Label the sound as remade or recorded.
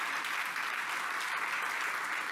recorded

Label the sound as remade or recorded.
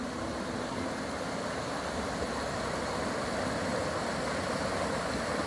recorded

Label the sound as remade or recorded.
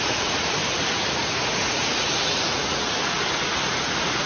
remade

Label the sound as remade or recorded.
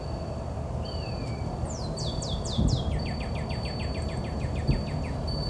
recorded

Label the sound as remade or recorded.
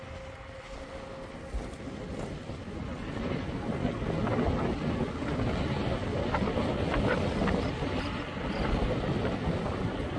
recorded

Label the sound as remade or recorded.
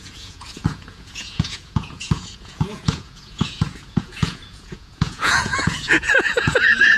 remade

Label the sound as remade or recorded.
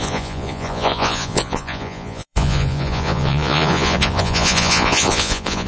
remade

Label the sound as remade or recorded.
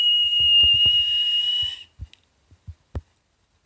recorded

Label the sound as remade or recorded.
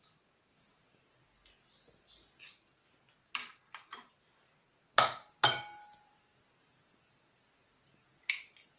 recorded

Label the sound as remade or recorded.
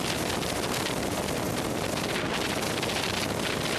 recorded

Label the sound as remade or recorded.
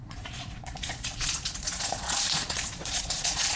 remade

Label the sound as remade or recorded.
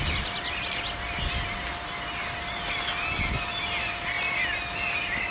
recorded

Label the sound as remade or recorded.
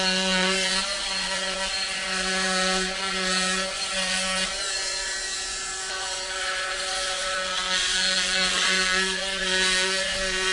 remade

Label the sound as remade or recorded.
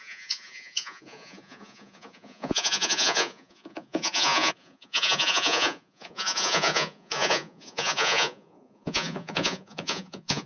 remade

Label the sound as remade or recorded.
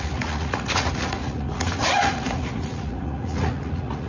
remade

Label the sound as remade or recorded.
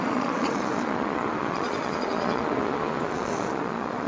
remade